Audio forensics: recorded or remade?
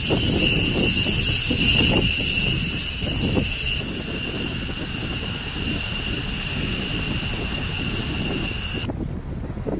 recorded